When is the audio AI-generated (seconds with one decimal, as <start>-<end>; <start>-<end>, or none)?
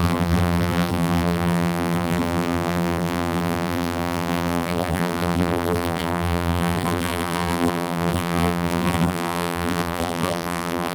0.0-10.9